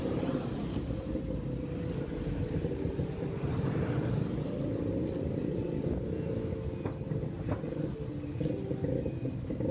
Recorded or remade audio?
recorded